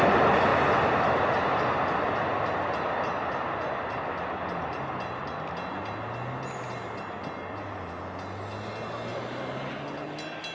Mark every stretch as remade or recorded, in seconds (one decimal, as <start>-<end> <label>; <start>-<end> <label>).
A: 0.0-9.1 recorded; 9.1-9.7 remade; 9.7-10.5 recorded